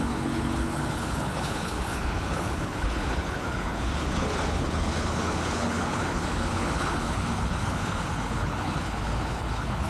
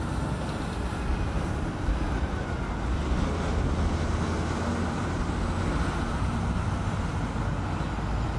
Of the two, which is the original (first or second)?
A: second